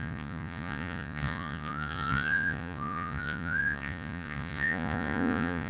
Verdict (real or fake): fake